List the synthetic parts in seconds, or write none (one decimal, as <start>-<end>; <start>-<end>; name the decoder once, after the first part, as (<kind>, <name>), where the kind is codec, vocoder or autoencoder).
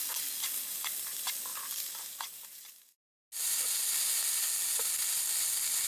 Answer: none